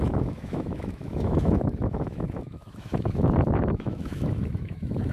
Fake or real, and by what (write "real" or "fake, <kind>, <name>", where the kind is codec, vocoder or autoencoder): fake, autoencoder, DAC-VAE